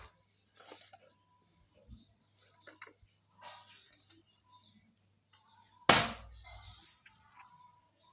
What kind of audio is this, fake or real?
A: real